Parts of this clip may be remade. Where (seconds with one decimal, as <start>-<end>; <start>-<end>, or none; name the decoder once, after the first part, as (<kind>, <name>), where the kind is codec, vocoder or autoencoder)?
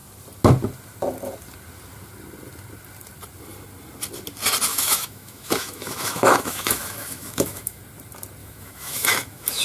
4.7-7.8 (autoencoder, DAC-VAE); 8.4-9.6